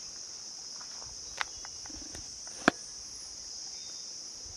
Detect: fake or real real